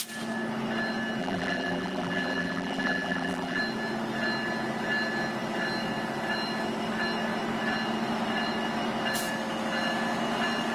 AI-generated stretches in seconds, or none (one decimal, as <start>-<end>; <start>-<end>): 1.2-3.6

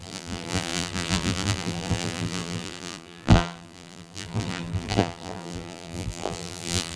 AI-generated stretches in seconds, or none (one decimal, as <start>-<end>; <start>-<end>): 0.0-7.0

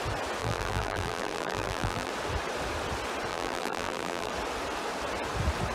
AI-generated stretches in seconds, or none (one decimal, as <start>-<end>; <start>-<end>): 0.4-2.1; 3.3-4.3

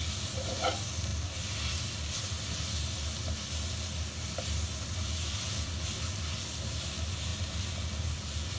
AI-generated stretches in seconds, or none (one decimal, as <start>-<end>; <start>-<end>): none